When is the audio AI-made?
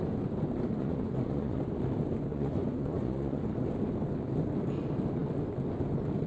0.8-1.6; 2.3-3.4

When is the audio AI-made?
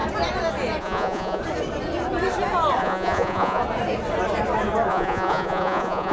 0.8-1.4; 2.8-3.6; 4.9-6.1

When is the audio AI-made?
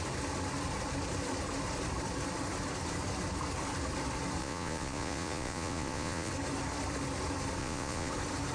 4.4-6.3; 7.6-8.1